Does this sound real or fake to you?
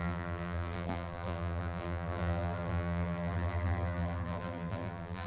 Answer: fake